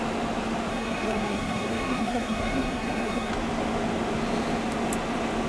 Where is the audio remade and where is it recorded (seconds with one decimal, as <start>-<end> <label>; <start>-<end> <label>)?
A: 0.0-0.7 recorded; 0.7-3.3 remade; 3.3-5.5 recorded